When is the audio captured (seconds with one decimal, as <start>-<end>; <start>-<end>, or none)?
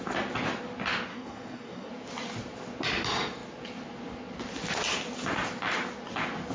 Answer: 0.0-1.1; 1.9-6.5